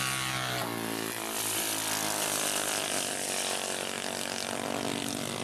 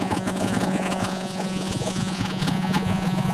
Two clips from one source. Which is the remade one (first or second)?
second